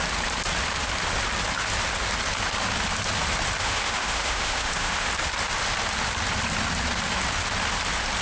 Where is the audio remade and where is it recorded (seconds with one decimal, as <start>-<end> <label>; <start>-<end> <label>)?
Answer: 0.0-3.6 recorded; 3.6-5.1 remade; 5.1-8.2 recorded